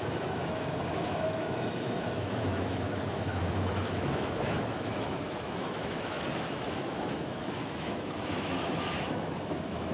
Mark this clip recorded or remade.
remade